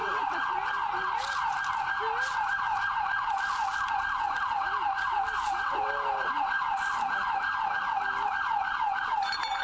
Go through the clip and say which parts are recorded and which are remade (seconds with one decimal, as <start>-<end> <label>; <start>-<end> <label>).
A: 0.0-9.6 recorded